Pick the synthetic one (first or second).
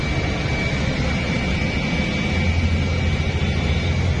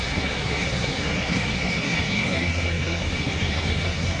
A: second